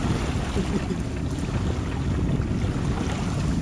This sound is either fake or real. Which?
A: real